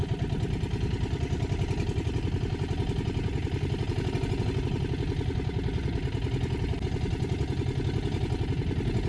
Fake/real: real